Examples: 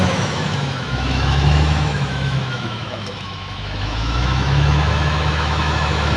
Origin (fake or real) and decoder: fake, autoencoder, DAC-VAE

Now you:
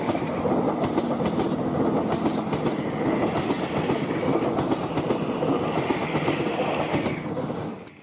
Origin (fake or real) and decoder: real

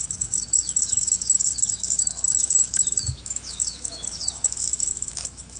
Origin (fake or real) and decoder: fake, autoencoder, DAC-VAE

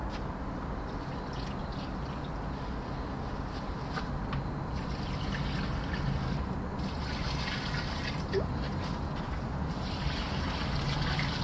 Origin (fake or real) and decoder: real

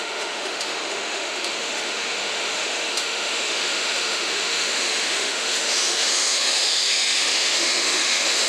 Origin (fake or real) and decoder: fake, autoencoder, DAC-VAE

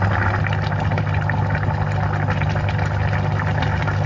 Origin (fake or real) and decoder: real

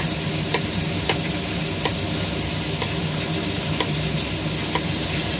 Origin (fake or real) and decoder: real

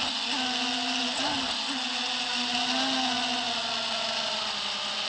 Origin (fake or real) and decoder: real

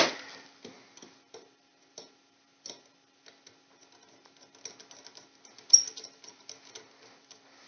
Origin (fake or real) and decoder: real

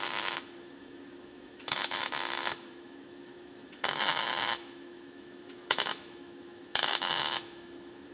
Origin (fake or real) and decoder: fake, autoencoder, DAC-VAE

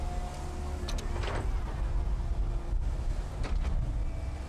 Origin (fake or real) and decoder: real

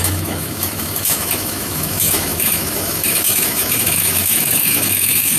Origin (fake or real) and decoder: fake, autoencoder, DAC-VAE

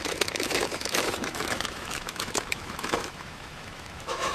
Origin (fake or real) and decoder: fake, autoencoder, DAC-VAE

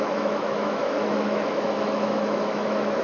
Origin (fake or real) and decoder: fake, autoencoder, DAC-VAE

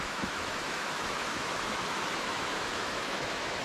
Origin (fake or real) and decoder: fake, autoencoder, DAC-VAE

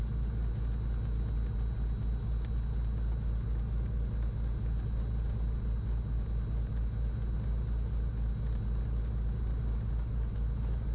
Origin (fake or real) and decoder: real